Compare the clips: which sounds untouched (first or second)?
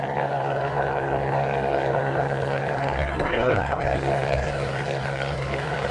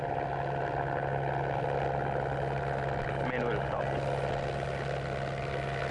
second